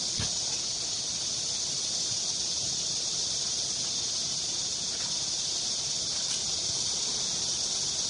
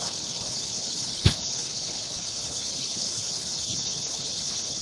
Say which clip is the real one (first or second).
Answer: first